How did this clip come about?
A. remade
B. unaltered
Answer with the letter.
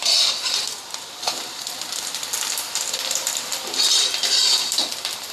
A